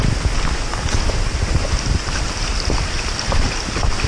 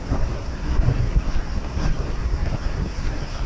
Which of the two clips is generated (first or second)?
second